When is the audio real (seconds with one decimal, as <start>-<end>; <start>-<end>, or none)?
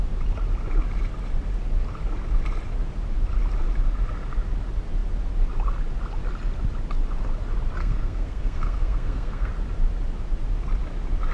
0.0-7.8; 9.5-11.3